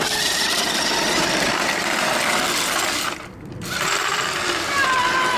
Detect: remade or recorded recorded